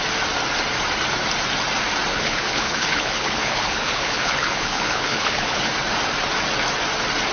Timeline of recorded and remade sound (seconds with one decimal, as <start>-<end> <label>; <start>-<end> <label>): 0.0-2.1 recorded; 2.1-5.7 remade; 5.7-7.3 recorded